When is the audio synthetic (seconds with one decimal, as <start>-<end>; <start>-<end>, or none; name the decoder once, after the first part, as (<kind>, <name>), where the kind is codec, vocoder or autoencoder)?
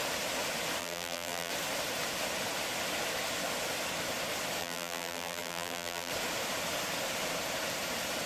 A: 0.8-1.5 (vocoder, BigVGAN v2); 4.6-6.1